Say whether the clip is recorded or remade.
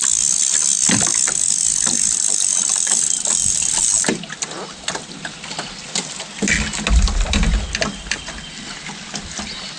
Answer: recorded